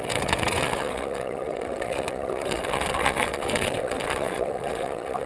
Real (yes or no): no